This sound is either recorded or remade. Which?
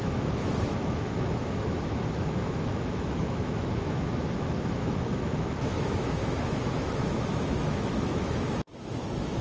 remade